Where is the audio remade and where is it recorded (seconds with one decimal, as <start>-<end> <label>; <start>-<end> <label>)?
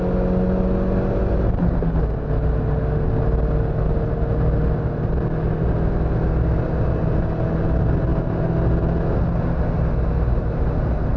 0.0-11.2 recorded